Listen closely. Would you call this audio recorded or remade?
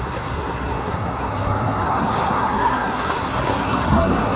remade